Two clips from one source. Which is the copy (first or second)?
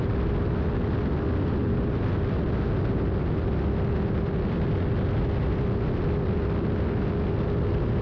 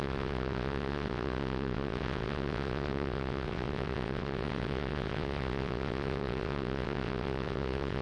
second